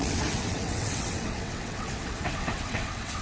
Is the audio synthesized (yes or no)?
yes